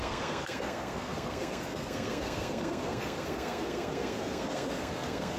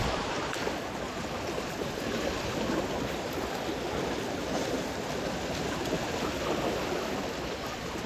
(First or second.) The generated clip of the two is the first